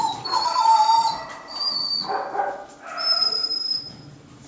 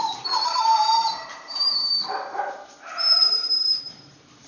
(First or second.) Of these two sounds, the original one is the first